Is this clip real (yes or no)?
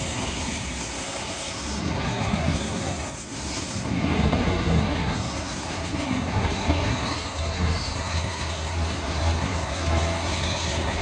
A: no